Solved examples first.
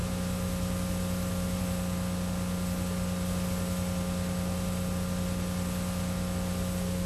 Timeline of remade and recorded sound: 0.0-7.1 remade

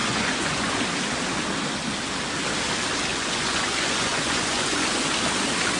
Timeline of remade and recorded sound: 0.0-0.8 remade; 0.8-3.1 recorded; 3.1-5.0 remade; 5.0-5.8 recorded

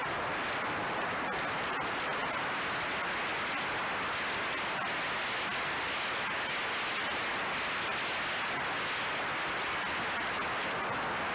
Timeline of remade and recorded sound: 0.0-11.3 recorded

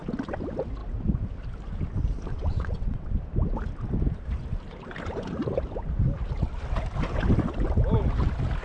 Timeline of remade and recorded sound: 0.0-2.3 recorded; 2.3-3.1 remade; 3.1-8.6 recorded